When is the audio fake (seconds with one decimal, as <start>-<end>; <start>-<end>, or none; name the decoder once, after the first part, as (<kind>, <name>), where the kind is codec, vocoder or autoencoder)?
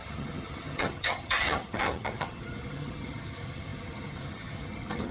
0.0-5.1 (vocoder, HiFi-GAN)